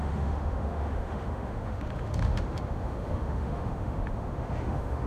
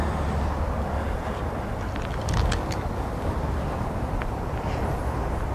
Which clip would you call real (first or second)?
second